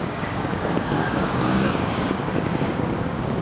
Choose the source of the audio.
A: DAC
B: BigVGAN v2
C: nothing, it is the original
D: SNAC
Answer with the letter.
A